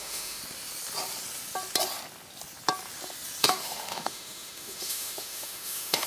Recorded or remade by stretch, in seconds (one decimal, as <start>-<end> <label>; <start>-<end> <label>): 0.0-0.4 remade; 0.4-3.4 recorded; 3.4-6.1 remade